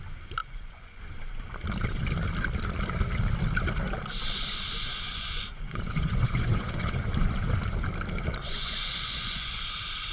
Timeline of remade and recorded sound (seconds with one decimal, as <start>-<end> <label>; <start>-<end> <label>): 0.0-0.4 recorded; 0.4-1.0 remade; 1.0-5.1 recorded; 5.1-7.1 remade; 7.1-8.4 recorded; 8.4-9.7 remade; 9.7-10.1 recorded